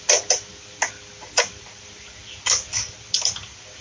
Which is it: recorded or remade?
recorded